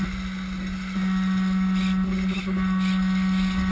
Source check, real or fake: real